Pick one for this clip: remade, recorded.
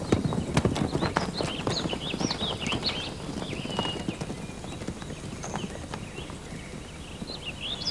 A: recorded